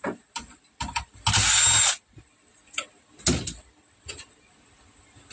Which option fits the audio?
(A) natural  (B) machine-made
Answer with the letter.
A